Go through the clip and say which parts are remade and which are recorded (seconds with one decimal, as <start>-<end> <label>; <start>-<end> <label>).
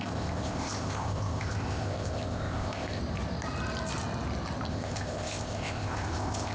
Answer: 0.0-3.0 remade; 3.0-4.7 recorded; 4.7-6.5 remade